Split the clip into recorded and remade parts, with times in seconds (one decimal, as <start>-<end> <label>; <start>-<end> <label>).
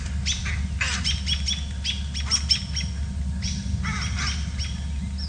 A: 0.0-5.3 recorded